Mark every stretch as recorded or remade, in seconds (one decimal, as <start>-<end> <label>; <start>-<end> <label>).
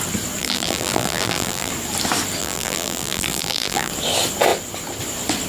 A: 0.0-0.4 recorded; 0.4-1.7 remade; 1.7-2.4 recorded; 2.4-3.9 remade; 3.9-5.5 recorded